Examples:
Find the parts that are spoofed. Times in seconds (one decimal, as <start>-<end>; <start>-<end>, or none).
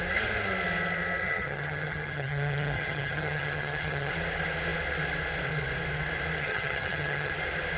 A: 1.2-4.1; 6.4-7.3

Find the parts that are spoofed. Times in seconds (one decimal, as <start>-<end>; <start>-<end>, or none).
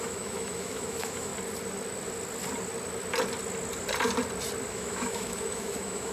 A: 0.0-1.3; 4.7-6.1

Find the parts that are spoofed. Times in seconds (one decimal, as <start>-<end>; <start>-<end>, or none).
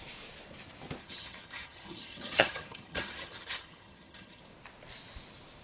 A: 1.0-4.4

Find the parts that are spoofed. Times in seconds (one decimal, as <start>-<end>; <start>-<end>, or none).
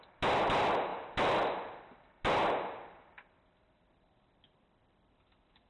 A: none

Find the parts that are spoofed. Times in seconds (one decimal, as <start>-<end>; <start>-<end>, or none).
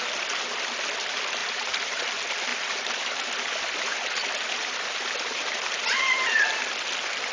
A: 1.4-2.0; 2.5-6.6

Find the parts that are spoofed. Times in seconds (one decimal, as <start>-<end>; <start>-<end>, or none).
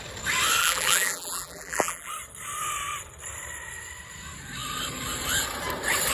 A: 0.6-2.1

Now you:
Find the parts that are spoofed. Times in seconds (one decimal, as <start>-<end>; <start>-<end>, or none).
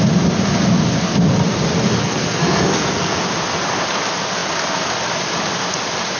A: 2.0-3.2